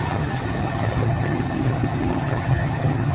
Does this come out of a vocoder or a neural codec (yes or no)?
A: yes